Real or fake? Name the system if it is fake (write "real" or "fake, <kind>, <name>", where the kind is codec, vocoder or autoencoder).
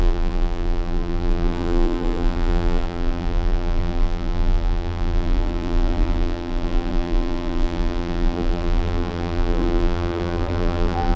fake, vocoder, BigVGAN v2